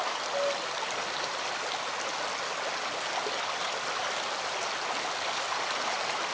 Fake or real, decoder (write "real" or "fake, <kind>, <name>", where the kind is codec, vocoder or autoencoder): real